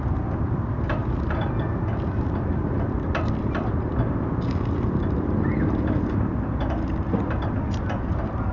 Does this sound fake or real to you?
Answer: real